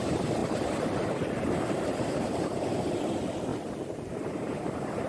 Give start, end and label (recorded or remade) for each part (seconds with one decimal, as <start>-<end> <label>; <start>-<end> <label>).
0.0-3.5 remade; 3.5-4.1 recorded; 4.1-5.1 remade

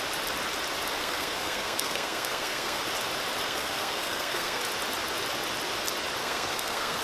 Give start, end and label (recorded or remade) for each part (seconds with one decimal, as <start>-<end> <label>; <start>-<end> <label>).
0.0-1.0 recorded; 1.0-2.8 remade; 2.8-3.4 recorded; 3.4-4.6 remade; 4.6-6.2 recorded; 6.2-7.0 remade

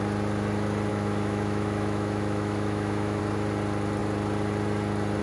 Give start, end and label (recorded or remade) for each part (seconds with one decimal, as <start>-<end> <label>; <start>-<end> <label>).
0.0-0.9 recorded; 0.9-3.2 remade; 3.2-5.2 recorded

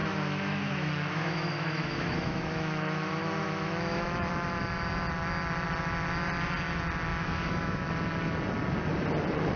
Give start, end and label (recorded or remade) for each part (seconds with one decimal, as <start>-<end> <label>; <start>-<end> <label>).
0.0-4.3 remade; 4.3-7.1 recorded; 7.1-7.8 remade; 7.8-9.6 recorded